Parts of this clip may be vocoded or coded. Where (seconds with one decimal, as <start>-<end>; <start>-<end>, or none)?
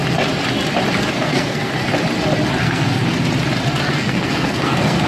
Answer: 1.1-1.7; 2.6-3.0; 3.9-5.1